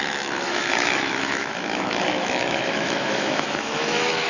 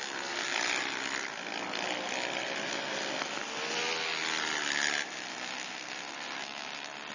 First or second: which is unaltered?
second